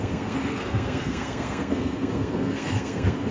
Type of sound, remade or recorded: remade